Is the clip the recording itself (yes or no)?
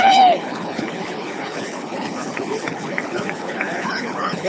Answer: no